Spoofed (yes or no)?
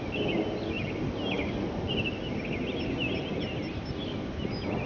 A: no